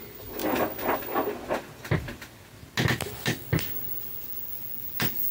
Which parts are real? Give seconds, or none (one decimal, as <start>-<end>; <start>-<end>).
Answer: 0.4-3.6